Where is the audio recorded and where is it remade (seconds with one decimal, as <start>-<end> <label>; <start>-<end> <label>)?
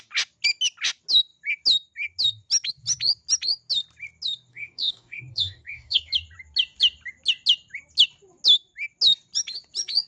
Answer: 0.0-4.5 recorded; 4.5-6.1 remade; 6.1-10.1 recorded